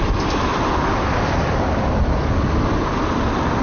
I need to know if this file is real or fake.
real